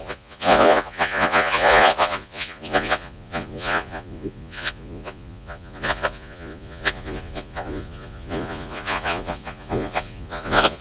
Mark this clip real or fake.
fake